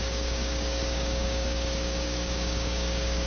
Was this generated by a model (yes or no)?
yes